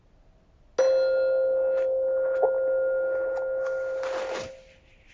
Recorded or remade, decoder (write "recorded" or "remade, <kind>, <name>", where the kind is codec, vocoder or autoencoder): recorded